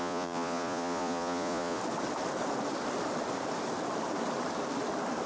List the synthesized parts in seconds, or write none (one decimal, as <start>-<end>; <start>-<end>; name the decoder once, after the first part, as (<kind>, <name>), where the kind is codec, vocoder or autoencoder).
0.0-1.8 (vocoder, Vocos)